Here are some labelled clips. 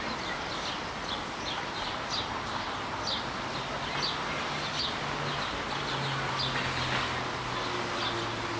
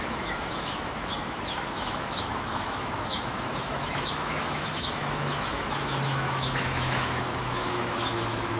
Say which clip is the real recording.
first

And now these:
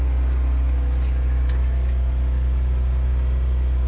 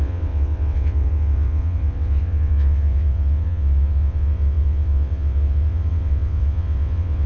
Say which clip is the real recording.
first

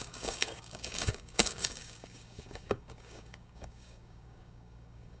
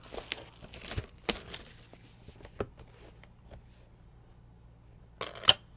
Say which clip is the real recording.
second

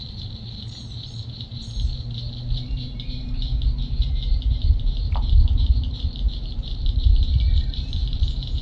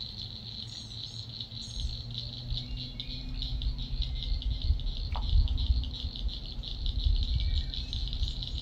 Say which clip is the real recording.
second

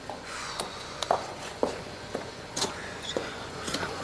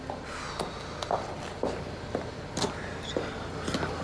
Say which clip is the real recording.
second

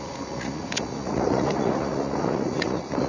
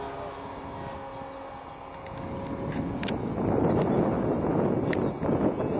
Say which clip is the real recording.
second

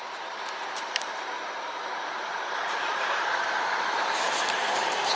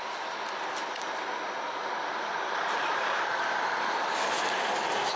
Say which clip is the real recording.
second